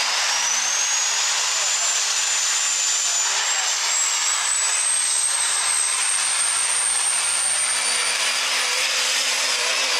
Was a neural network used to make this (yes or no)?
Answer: no